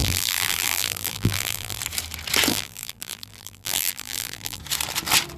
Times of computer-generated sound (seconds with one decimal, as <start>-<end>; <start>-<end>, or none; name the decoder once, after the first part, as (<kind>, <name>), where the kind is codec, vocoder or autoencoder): 0.0-1.8 (vocoder, BigVGAN v2); 2.5-4.6